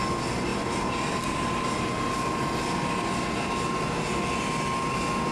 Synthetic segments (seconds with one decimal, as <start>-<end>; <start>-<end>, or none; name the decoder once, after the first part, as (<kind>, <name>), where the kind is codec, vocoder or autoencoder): none